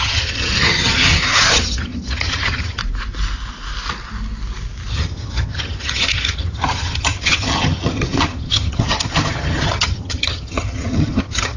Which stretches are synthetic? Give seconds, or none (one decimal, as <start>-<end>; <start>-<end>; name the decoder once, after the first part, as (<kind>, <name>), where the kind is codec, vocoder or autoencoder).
0.0-2.8 (vocoder, HiFi-GAN); 4.9-11.6